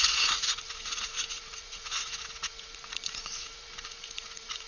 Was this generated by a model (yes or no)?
yes